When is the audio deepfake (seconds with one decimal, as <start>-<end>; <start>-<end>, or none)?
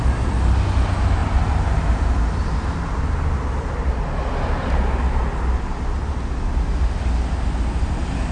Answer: none